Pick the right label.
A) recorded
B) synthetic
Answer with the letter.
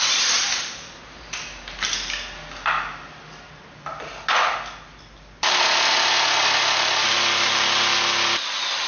A